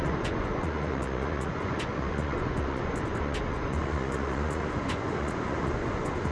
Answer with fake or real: fake